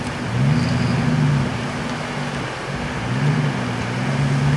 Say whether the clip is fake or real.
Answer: real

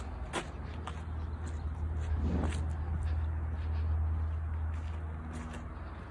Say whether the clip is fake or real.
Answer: real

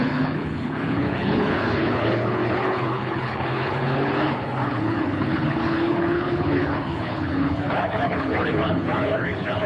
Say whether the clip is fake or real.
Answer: fake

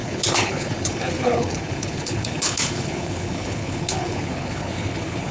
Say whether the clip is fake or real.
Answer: fake